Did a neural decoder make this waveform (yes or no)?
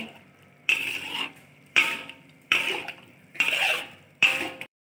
yes